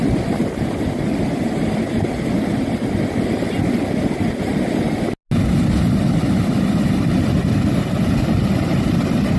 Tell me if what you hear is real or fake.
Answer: real